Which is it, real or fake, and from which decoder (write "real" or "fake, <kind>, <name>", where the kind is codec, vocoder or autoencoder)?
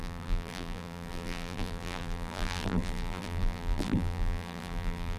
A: fake, vocoder, BigVGAN v2